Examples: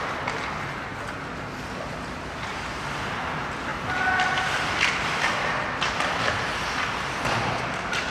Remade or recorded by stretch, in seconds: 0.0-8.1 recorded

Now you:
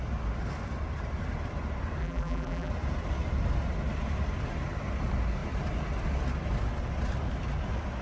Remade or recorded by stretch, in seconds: 0.0-2.0 recorded; 2.0-2.7 remade; 2.7-8.0 recorded

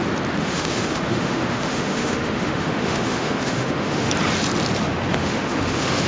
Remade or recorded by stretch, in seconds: 0.0-0.4 recorded; 0.4-4.1 remade; 4.1-5.1 recorded; 5.1-6.1 remade

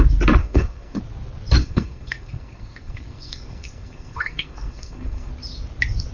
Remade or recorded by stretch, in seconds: 0.0-0.4 recorded; 0.4-1.0 remade; 1.0-1.6 recorded; 1.6-5.3 remade; 5.3-6.1 recorded